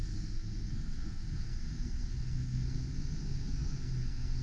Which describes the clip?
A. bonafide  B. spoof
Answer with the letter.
B